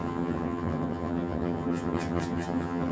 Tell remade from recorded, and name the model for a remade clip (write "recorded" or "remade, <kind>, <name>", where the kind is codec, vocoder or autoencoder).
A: remade, vocoder, HiFi-GAN